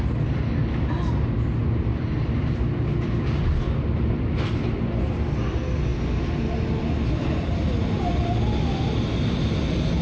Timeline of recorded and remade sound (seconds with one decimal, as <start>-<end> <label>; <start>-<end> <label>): 0.0-10.0 recorded